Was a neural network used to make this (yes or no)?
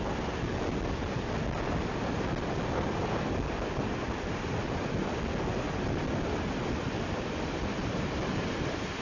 no